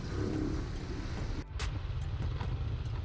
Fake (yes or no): no